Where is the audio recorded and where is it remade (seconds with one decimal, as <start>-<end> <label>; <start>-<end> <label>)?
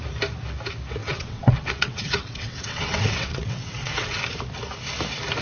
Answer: 0.0-1.0 recorded; 1.0-4.2 remade; 4.2-5.4 recorded